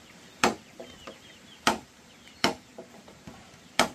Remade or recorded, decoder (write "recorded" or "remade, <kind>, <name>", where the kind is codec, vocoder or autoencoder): remade, vocoder, BigVGAN v2